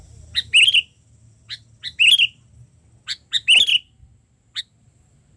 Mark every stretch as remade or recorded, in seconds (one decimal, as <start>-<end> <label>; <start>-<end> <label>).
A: 0.0-5.4 recorded